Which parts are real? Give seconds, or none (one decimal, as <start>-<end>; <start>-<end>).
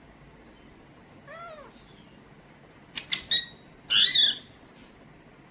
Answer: 0.0-5.5